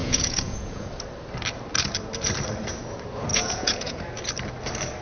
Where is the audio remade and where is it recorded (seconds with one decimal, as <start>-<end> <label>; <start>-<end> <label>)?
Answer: 0.0-0.9 remade; 0.9-3.3 recorded; 3.3-4.0 remade; 4.0-5.0 recorded